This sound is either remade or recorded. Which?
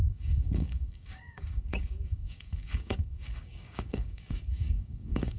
remade